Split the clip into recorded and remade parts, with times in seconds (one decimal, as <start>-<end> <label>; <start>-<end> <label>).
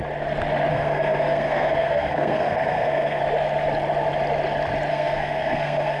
0.0-0.7 recorded; 0.7-3.2 remade; 3.2-4.9 recorded; 4.9-6.0 remade